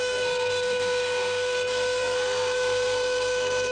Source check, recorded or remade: remade